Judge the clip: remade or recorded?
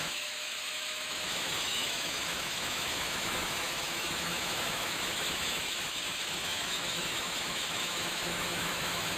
remade